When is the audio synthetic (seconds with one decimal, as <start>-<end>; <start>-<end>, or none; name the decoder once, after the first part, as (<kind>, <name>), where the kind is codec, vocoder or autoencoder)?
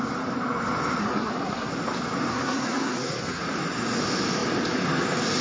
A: 1.0-1.7 (codec, SNAC); 2.3-3.4